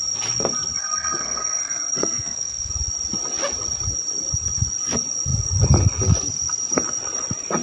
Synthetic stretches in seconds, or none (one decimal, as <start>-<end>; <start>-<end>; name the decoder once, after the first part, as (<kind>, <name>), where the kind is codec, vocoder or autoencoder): 0.8-2.7 (codec, SNAC)